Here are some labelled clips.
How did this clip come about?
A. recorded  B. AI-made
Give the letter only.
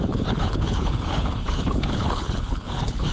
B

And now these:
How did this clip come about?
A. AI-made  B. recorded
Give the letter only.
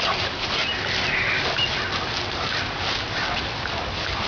B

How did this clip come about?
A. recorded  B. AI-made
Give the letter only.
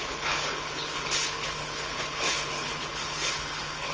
B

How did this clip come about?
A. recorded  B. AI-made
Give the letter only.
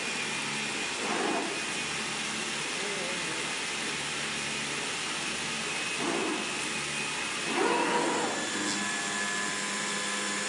A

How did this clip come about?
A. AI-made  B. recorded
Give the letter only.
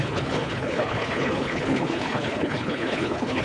A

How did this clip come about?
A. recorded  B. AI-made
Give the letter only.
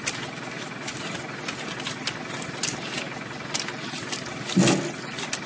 A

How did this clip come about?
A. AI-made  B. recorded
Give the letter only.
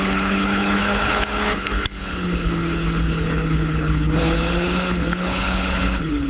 A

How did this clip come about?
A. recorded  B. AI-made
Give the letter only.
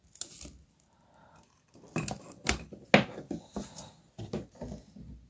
A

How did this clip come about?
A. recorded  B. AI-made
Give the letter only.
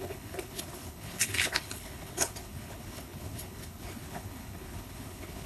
B